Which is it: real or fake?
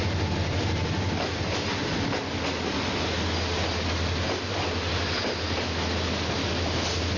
real